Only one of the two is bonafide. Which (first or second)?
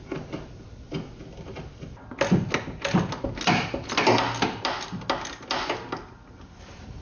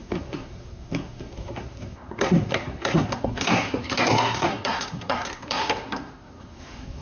first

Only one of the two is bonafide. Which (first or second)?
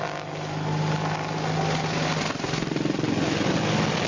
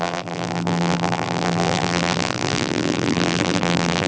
first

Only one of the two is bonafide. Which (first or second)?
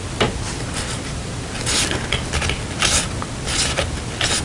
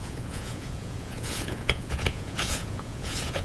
first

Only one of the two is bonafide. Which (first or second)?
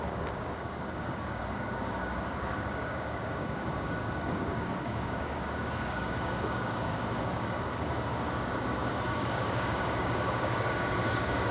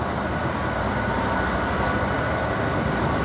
second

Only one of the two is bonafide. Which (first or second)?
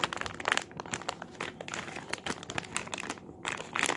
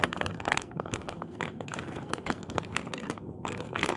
first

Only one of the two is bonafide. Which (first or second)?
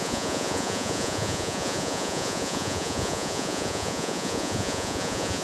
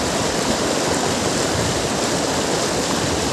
second